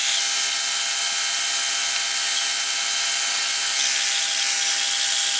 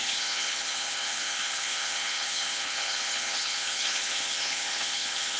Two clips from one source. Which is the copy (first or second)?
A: second